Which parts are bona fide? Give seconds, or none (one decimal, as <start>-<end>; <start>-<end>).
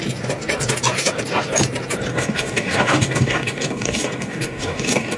0.0-2.1